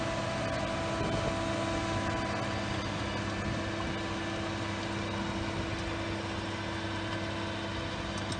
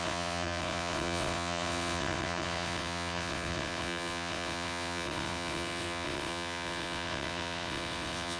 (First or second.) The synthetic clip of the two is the second